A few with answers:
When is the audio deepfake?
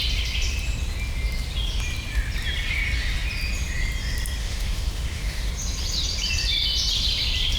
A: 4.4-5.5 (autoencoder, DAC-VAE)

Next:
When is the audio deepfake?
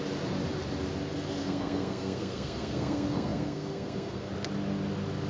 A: 1.4-4.3 (codec, SNAC)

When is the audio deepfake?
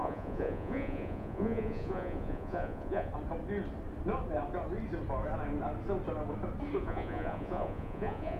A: 0.0-3.1 (vocoder, Vocos); 6.8-8.4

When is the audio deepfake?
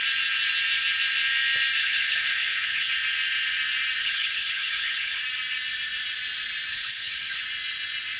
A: 1.8-2.9 (codec, HILCodec); 4.0-5.2; 6.7-7.4